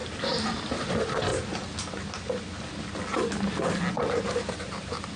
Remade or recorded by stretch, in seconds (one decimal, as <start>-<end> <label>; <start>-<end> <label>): 0.0-1.3 remade; 1.3-4.1 recorded; 4.1-5.2 remade